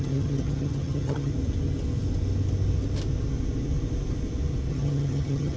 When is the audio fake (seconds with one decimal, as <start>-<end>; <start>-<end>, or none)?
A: 0.0-1.3; 4.7-5.6